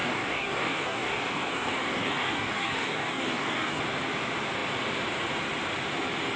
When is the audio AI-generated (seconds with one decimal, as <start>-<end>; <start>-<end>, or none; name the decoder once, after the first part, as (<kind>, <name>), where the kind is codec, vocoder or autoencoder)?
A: 0.0-3.8 (codec, DAC)